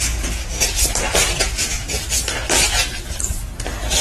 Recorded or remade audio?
recorded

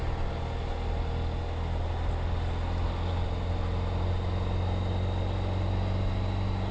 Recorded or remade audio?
recorded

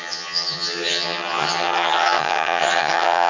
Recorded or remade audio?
remade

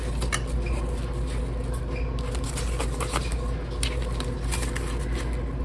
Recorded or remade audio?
recorded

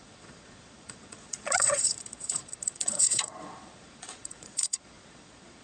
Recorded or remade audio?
remade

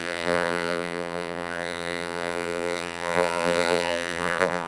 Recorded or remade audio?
remade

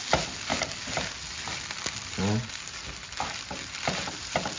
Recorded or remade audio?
recorded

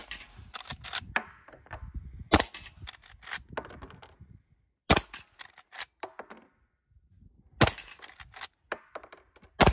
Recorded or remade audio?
recorded